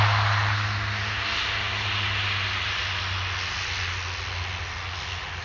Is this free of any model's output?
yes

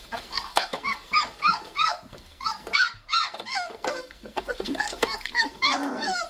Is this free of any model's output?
no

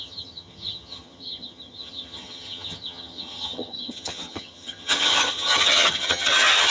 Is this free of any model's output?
no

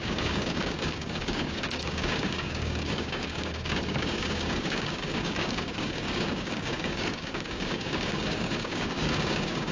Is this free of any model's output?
no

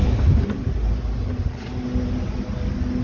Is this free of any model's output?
yes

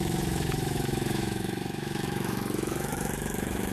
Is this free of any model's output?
no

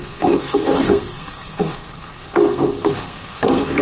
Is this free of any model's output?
no